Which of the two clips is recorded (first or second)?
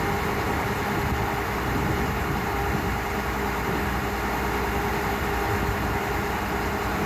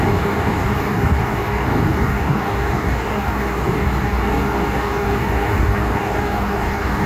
first